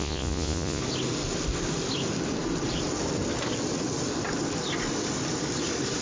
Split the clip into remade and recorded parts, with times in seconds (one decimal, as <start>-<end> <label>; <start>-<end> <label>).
0.0-0.8 remade; 0.8-6.0 recorded